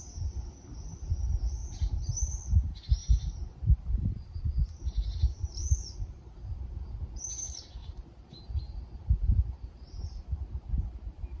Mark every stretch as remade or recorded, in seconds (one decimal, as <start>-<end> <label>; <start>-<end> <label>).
0.0-1.6 recorded; 1.6-2.4 remade; 2.4-3.0 recorded; 3.0-6.9 remade; 6.9-7.8 recorded; 7.8-10.7 remade; 10.7-11.4 recorded